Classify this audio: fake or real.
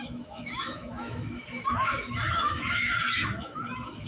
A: fake